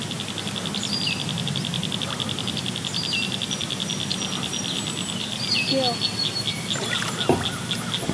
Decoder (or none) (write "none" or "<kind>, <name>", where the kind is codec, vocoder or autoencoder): none